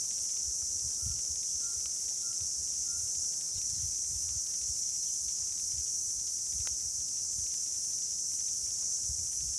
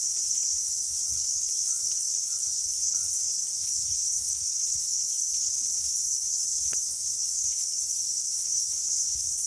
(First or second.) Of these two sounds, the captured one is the first